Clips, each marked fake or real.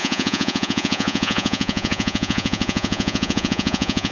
fake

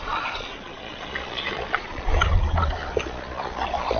fake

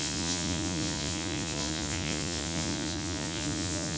fake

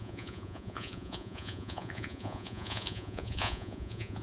fake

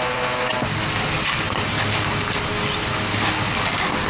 real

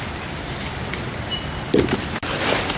real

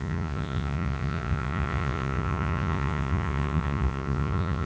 fake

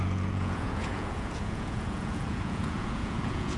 fake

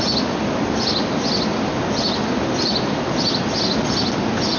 real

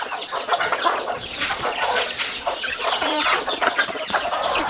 fake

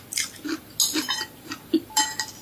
real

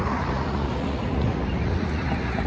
fake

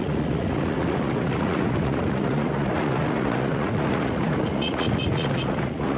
fake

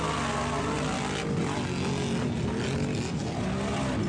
real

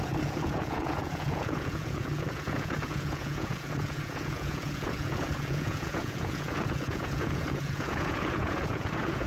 fake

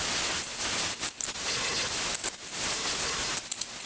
real